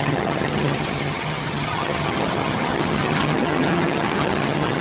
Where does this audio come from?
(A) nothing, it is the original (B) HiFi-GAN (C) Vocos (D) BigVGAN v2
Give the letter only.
B